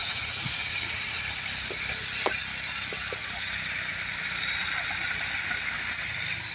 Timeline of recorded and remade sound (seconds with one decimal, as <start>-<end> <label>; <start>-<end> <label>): 0.0-1.2 remade; 1.2-6.5 recorded